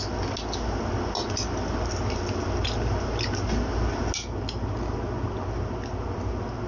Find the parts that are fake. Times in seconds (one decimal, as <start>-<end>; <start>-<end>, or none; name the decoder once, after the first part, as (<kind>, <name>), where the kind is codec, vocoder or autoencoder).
none